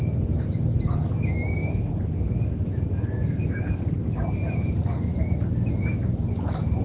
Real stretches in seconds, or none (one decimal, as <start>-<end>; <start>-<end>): 0.0-6.8